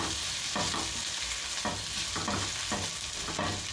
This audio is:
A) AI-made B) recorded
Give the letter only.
B